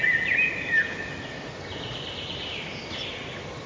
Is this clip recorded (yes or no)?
yes